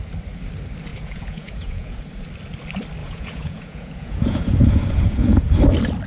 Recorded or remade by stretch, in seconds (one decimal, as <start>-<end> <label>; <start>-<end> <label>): 0.0-0.9 recorded; 0.9-2.1 remade; 2.1-3.0 recorded; 3.0-5.6 remade; 5.6-6.1 recorded